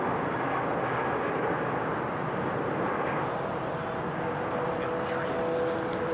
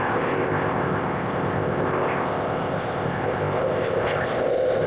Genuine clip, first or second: first